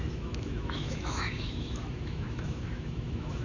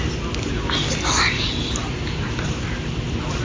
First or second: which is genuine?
second